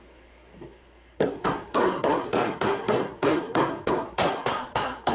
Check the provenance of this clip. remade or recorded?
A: remade